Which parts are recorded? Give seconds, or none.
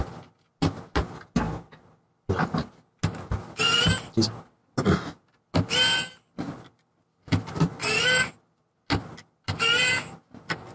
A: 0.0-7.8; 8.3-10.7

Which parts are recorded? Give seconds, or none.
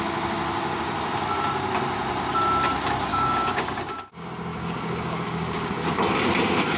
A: 0.0-3.1; 4.0-4.5; 5.9-6.8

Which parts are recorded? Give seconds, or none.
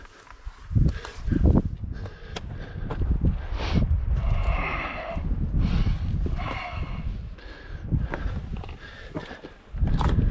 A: 0.0-10.3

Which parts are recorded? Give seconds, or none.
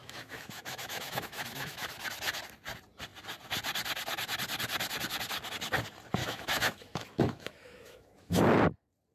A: 1.9-6.2; 8.4-9.1